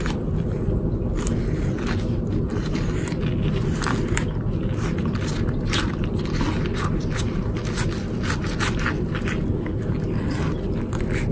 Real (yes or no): yes